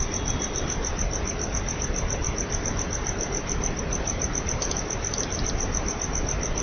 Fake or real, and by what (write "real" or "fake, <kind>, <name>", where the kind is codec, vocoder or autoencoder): real